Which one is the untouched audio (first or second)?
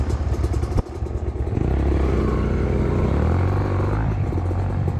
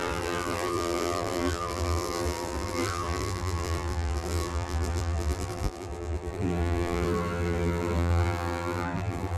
first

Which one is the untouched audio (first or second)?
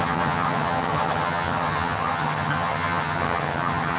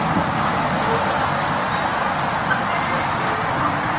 second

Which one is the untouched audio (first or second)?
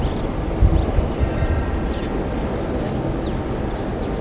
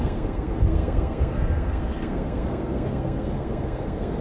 first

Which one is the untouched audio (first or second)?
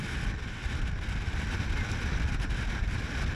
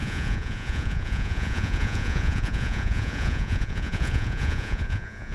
first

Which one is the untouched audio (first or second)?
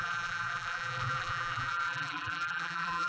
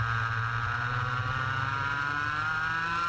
second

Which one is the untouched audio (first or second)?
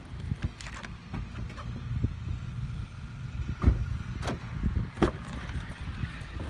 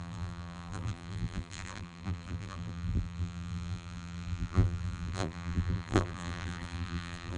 first